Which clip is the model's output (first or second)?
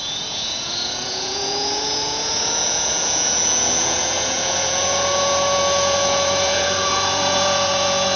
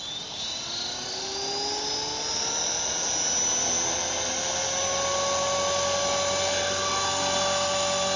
first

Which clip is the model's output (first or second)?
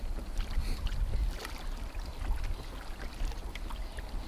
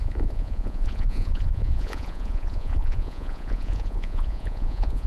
second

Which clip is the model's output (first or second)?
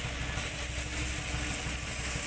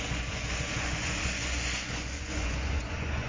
second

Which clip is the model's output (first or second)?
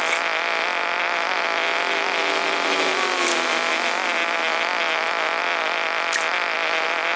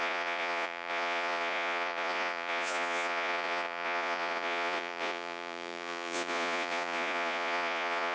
second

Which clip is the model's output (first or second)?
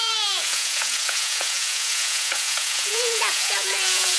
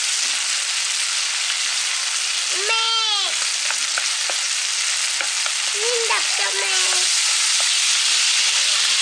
first